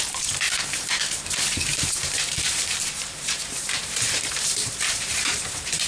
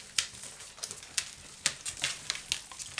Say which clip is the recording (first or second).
second